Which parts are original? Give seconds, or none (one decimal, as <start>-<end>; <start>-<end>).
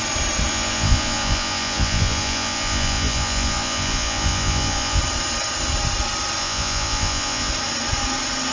0.0-0.5; 5.0-6.4; 7.5-8.5